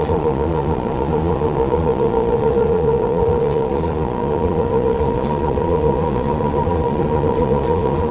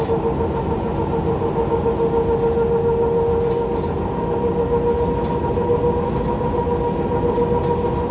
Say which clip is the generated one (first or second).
first